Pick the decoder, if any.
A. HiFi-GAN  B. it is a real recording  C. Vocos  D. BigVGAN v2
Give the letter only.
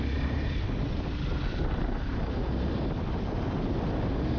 B